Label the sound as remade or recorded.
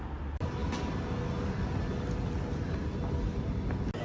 recorded